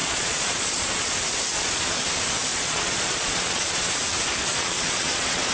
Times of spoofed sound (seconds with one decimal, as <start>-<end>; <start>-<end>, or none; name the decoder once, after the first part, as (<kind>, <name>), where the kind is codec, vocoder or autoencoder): 0.0-1.1 (vocoder, Vocos); 1.5-2.0; 2.5-3.9; 4.5-5.5

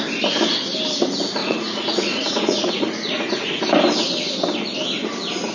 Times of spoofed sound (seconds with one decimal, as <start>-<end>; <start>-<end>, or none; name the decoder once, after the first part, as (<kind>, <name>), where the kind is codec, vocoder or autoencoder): 1.4-3.6 (vocoder, Vocos)